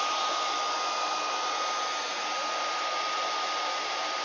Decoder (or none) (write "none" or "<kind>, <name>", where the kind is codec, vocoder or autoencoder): vocoder, BigVGAN v2